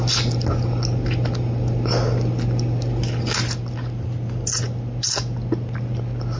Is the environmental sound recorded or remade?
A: recorded